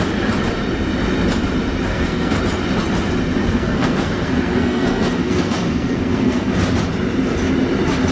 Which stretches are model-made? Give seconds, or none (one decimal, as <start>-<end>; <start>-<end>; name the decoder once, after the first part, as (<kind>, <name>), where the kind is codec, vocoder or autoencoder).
1.9-2.4 (codec, SNAC); 3.4-6.5